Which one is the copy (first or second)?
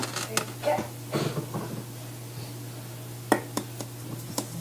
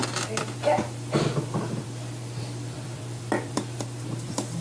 second